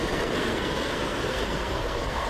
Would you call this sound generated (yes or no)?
yes